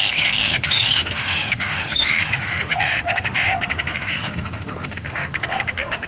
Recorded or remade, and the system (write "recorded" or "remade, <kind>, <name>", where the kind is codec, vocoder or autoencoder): remade, autoencoder, DAC-VAE